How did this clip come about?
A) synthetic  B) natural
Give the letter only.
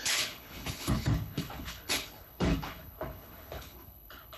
A